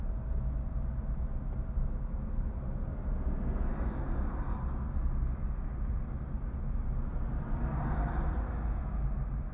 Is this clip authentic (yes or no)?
yes